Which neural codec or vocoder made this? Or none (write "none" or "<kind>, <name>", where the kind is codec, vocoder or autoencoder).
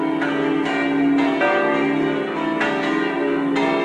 none